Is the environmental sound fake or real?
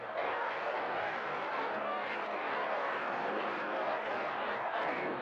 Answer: fake